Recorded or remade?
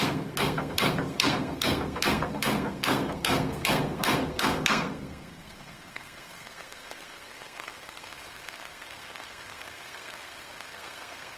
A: remade